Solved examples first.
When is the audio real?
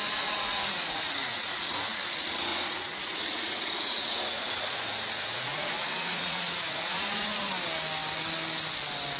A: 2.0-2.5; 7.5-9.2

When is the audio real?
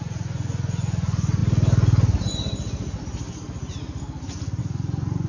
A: 1.4-4.6